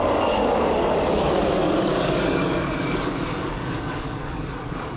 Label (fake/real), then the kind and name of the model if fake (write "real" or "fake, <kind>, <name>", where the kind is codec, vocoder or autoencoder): fake, codec, DAC